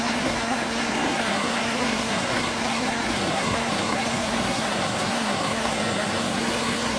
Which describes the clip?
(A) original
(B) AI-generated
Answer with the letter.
B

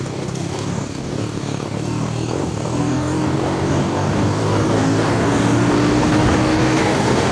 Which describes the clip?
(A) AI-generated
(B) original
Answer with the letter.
A